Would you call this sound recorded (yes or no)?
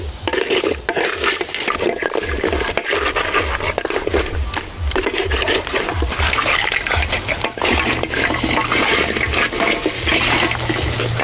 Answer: yes